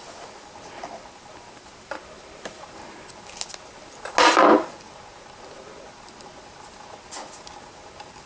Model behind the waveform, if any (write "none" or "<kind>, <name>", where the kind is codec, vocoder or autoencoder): none